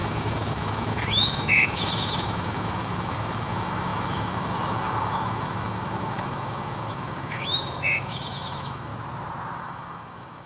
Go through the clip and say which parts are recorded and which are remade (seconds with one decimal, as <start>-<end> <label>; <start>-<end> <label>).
0.0-8.9 remade; 8.9-9.6 recorded; 9.6-10.5 remade